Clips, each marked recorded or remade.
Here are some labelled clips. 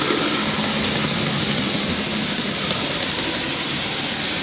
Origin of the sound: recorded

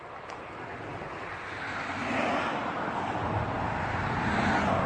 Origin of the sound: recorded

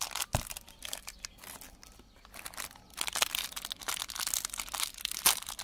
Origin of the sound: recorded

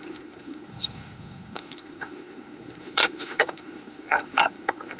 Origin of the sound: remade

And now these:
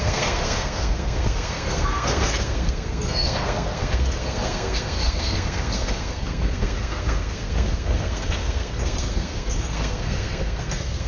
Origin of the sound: remade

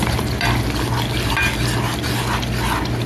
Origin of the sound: recorded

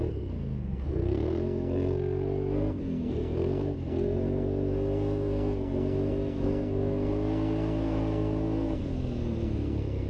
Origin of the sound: remade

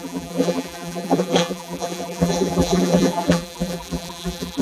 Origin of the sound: remade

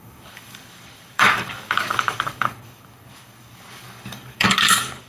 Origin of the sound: remade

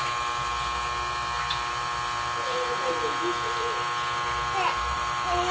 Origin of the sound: recorded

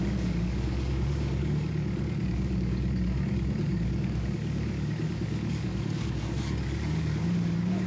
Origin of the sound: remade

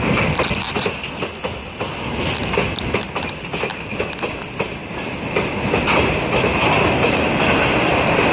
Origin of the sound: recorded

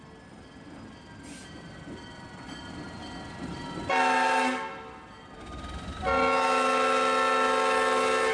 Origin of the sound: recorded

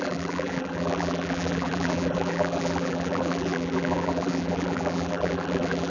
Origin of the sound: remade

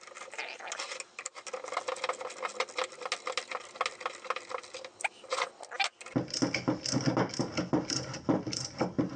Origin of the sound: recorded